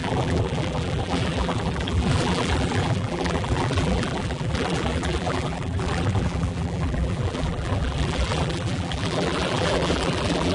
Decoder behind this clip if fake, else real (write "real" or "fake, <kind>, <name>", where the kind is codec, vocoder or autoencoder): fake, vocoder, BigVGAN v2